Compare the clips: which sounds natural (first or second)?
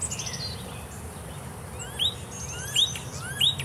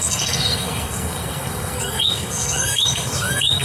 first